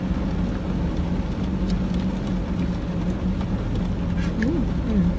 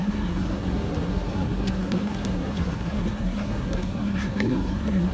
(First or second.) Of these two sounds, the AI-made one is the second